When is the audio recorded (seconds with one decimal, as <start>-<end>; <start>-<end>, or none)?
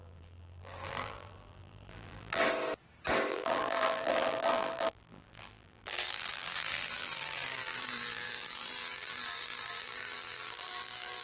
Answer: 2.4-3.3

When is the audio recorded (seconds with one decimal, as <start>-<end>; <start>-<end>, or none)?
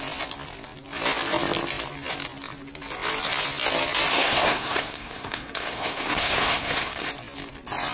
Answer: 0.0-4.1; 7.1-7.9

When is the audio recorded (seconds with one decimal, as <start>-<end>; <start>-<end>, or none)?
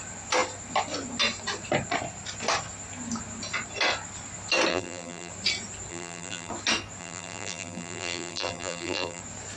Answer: 0.0-4.7; 5.3-5.9; 6.5-7.0; 9.2-9.6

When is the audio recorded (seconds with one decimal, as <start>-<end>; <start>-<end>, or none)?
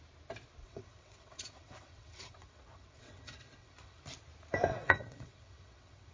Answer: 0.0-0.6; 4.0-4.7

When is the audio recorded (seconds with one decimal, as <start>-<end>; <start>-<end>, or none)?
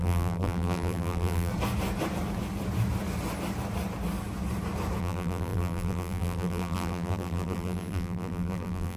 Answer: 1.5-5.0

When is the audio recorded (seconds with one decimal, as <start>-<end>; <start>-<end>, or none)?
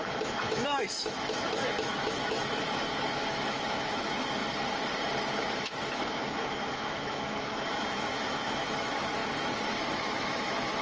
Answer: 4.4-5.3; 9.2-9.9